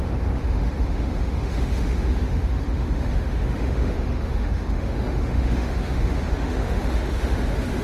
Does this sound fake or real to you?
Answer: fake